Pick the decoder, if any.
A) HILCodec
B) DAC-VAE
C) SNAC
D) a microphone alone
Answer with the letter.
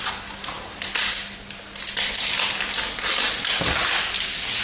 D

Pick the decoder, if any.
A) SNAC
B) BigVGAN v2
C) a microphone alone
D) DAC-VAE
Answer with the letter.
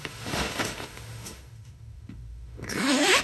D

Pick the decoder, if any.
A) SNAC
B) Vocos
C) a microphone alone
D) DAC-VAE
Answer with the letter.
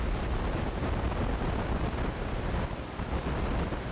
C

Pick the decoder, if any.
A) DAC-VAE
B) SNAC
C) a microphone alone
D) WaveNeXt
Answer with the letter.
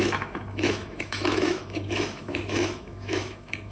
A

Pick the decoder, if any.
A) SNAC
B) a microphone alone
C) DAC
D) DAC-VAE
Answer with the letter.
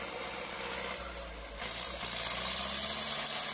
B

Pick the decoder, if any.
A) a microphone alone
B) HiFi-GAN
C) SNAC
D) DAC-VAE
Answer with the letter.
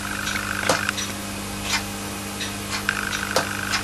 A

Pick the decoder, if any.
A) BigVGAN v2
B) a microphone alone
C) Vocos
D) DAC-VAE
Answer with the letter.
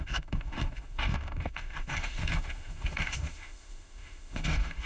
D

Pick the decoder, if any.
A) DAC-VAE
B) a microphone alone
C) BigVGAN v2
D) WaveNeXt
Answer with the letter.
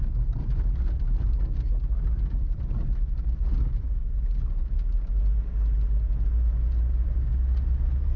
B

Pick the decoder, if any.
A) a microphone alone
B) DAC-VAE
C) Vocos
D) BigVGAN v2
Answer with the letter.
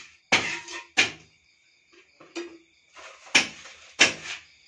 A